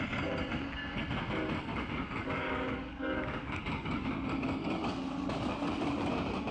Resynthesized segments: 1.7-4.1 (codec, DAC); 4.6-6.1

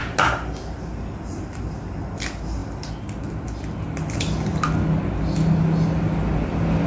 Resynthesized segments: none

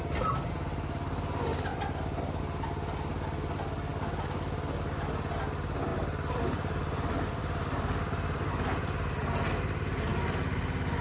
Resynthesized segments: 1.7-2.4 (vocoder, BigVGAN v2); 5.9-8.5

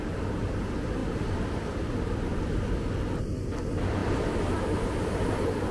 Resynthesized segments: 1.0-2.8 (vocoder, BigVGAN v2)

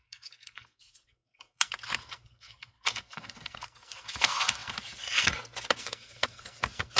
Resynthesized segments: 0.0-7.0 (codec, SNAC)